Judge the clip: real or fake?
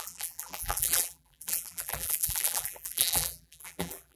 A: fake